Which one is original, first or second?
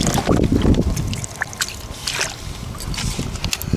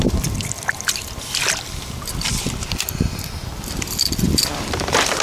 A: first